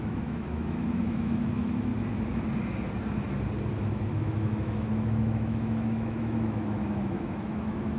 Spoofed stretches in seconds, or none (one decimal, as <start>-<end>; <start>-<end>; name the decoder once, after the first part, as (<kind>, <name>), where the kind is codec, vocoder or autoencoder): 0.0-1.9 (autoencoder, DAC-VAE); 3.8-8.0